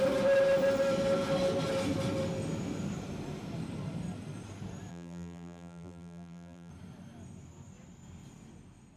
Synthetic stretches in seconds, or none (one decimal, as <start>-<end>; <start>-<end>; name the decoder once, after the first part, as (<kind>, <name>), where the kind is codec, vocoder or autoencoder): 4.9-6.7 (vocoder, BigVGAN v2)